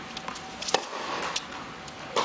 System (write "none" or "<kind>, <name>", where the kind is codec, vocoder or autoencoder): none